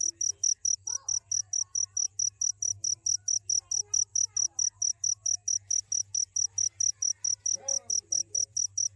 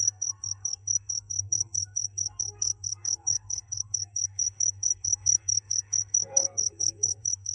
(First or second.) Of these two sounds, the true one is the first